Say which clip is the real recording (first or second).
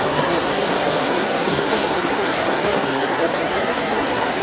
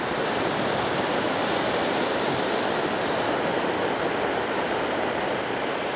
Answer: second